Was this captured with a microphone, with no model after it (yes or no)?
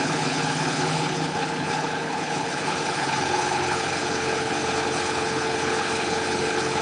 no